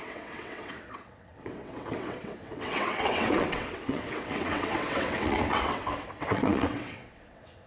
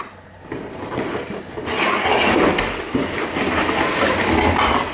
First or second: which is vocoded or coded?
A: first